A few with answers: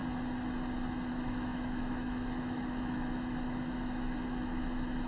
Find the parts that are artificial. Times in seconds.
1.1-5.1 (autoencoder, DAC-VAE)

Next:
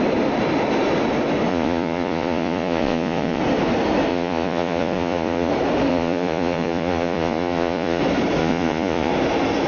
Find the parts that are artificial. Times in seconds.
1.5-3.4 (vocoder, Vocos); 4.1-5.5; 5.9-8.0; 8.4-9.1

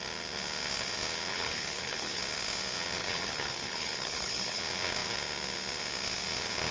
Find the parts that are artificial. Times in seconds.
1.3-2.2 (codec, HILCodec); 3.0-4.6

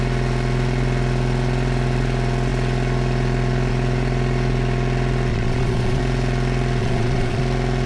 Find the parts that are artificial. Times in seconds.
5.3-6.0 (vocoder, Vocos); 6.8-7.4

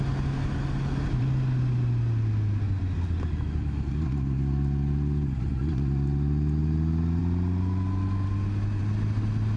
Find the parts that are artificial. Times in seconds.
none

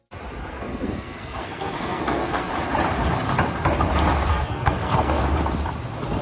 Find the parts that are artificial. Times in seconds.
0.4-2.5 (codec, SNAC); 4.3-5.2

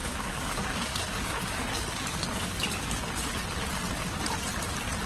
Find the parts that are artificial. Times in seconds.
0.0-3.1 (codec, DAC)